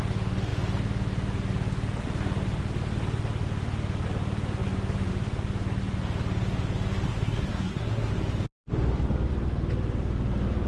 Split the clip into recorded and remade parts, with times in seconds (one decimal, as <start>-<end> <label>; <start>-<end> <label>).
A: 0.0-7.1 recorded; 7.1-8.1 remade; 8.1-10.7 recorded